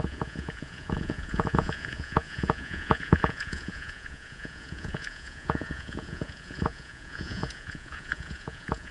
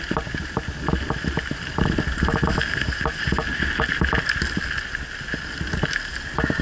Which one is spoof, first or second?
first